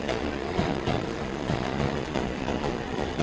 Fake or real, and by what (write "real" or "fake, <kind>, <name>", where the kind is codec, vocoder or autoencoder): fake, vocoder, Vocos